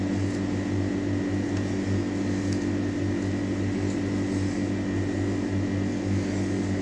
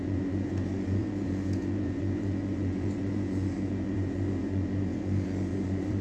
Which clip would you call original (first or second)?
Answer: first